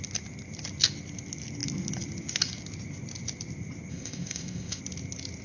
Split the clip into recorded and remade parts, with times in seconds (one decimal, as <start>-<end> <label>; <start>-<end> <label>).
0.0-3.9 recorded; 3.9-4.8 remade; 4.8-5.4 recorded